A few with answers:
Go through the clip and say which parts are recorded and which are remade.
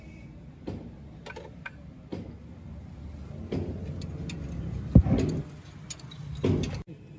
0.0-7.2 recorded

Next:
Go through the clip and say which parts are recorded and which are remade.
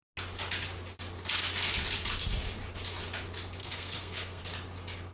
0.0-3.6 recorded; 3.6-4.4 remade; 4.4-5.1 recorded